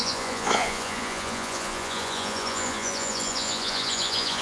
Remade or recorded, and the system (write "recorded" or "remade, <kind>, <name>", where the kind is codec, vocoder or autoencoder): remade, vocoder, Vocos